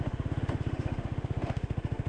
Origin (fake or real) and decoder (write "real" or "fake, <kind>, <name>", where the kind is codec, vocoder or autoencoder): fake, autoencoder, DAC-VAE